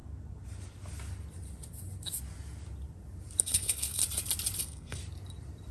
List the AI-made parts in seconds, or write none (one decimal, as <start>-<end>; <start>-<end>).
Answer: 3.4-4.0; 4.6-5.0